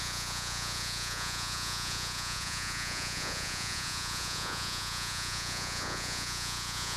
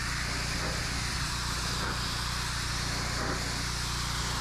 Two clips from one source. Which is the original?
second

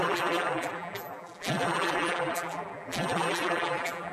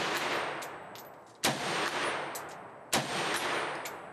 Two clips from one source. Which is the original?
second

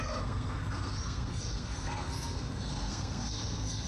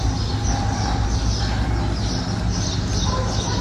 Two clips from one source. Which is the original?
second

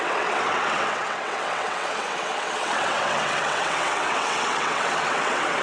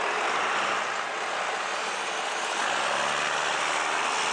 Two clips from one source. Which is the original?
second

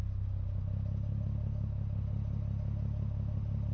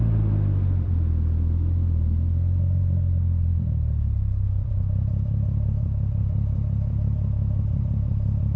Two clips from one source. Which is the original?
first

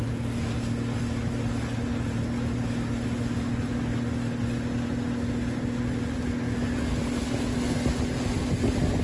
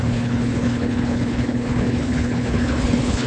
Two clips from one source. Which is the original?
first